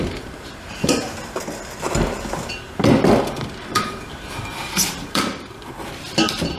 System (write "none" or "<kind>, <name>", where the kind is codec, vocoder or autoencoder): vocoder, BigVGAN v2